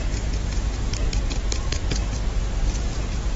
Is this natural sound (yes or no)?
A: no